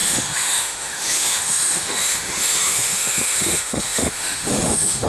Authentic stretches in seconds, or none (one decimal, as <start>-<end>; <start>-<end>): none